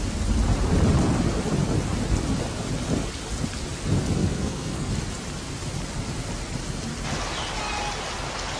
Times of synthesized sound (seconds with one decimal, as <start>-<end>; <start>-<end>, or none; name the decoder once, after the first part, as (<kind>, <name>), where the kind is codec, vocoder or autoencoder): 4.2-4.9 (codec, SNAC)